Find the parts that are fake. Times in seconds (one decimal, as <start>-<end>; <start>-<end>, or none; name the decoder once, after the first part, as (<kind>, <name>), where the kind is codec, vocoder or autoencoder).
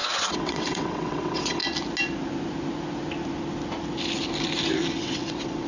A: 0.0-1.6 (vocoder, WaveNeXt); 5.0-5.7